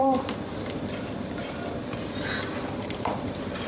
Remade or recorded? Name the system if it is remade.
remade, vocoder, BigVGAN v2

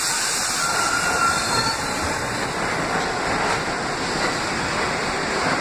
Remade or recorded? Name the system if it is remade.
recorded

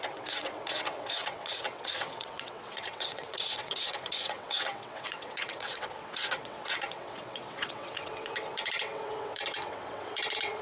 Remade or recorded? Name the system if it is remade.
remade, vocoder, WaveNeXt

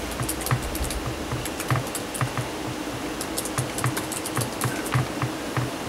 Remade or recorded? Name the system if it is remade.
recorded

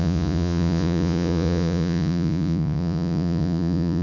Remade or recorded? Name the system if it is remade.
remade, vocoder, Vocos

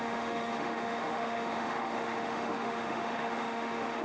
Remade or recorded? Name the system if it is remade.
remade, autoencoder, DAC-VAE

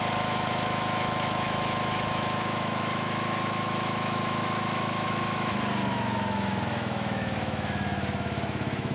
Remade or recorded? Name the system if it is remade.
remade, autoencoder, DAC-VAE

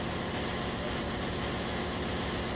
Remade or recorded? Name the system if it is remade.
recorded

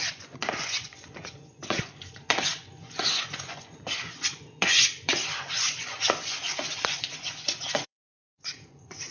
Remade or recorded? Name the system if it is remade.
remade, vocoder, Vocos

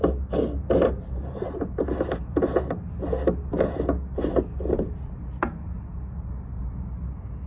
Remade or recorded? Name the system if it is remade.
recorded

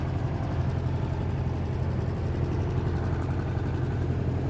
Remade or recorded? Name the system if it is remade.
recorded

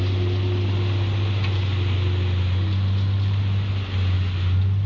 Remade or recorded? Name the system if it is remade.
recorded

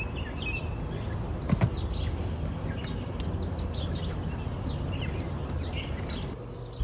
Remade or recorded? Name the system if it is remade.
recorded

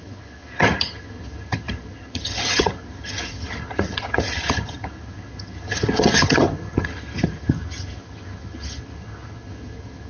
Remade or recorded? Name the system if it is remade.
remade, vocoder, HiFi-GAN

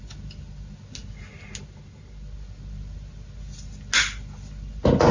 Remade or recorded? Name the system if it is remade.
recorded